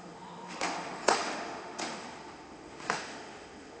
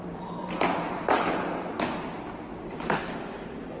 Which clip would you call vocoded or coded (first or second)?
first